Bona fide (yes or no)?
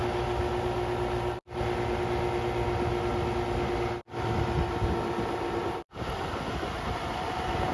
yes